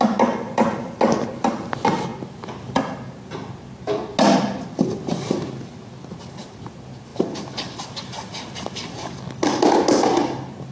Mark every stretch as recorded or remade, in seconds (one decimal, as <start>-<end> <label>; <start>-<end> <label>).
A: 0.0-10.7 recorded